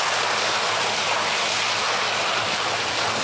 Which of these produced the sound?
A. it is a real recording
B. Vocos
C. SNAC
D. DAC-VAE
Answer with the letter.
A